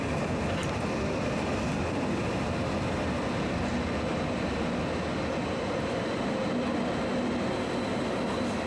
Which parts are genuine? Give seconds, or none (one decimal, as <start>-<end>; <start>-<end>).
0.0-8.7